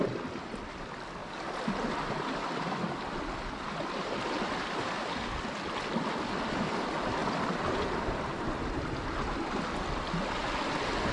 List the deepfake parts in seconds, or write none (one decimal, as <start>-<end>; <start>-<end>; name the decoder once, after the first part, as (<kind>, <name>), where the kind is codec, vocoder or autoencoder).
1.2-5.4 (vocoder, BigVGAN v2)